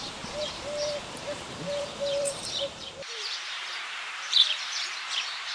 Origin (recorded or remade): remade